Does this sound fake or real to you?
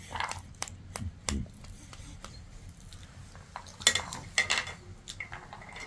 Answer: real